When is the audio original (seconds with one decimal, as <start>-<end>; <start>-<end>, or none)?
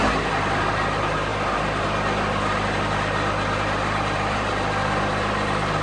0.0-5.8